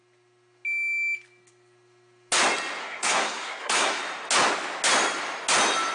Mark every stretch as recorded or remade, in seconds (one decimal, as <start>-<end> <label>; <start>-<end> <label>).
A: 0.0-2.8 recorded; 2.8-4.0 remade; 4.0-5.9 recorded